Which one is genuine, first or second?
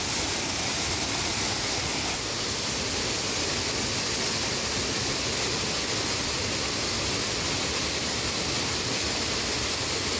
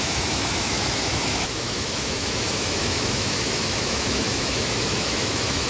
first